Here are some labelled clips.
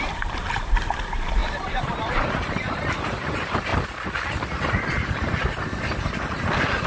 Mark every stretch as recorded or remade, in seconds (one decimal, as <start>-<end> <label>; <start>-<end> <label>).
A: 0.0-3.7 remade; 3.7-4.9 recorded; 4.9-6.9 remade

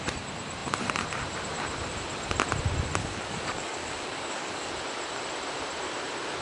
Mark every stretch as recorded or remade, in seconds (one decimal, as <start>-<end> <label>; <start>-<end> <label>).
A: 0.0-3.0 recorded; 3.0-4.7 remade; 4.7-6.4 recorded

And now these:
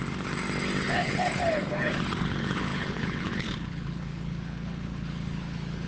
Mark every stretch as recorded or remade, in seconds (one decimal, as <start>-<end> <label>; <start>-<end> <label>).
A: 0.0-0.8 recorded; 0.8-5.9 remade

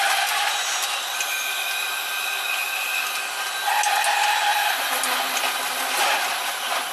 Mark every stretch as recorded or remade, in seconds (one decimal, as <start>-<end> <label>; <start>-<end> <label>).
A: 0.0-6.9 recorded

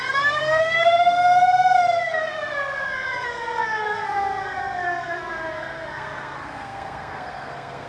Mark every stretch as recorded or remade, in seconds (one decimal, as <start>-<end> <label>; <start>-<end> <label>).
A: 0.0-7.9 remade